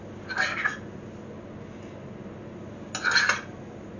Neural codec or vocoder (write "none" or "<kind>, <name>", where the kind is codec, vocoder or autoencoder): none